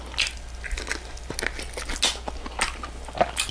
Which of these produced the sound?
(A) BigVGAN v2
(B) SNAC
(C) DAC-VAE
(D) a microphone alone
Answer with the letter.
D